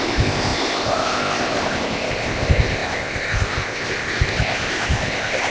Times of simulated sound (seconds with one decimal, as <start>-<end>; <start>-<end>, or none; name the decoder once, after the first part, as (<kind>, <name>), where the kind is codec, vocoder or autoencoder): 0.0-5.5 (codec, ZipCodec)